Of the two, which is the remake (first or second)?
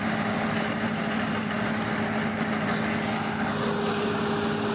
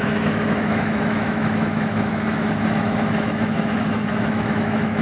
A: second